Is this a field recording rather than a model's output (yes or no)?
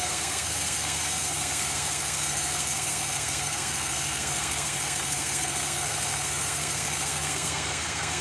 no